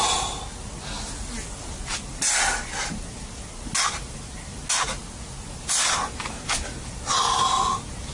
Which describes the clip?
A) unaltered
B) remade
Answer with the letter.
A